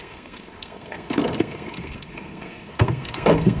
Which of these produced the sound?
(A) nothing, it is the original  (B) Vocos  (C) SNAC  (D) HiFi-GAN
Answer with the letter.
C